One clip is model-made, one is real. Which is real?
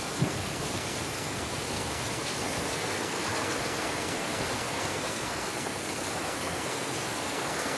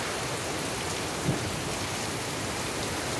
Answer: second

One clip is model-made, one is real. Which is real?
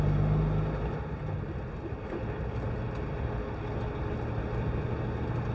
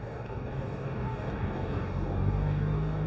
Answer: first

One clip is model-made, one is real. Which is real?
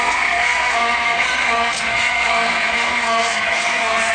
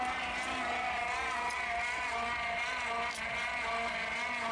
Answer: second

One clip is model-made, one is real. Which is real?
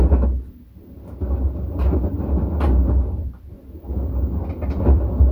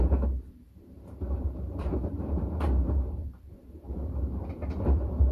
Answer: first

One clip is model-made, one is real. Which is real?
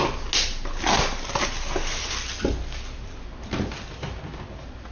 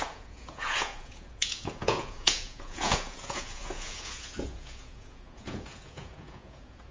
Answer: first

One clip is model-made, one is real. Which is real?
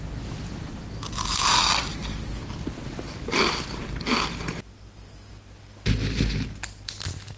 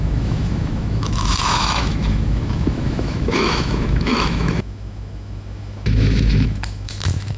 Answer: first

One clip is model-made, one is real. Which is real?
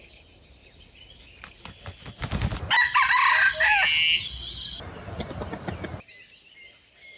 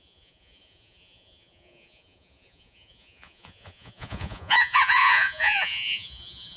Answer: first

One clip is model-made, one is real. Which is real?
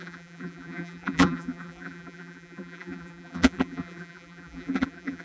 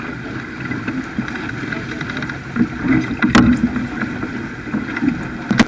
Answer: second